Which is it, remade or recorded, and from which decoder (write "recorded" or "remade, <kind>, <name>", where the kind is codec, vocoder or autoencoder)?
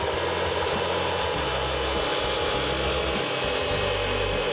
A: recorded